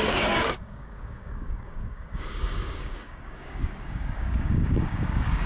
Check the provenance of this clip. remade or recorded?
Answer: remade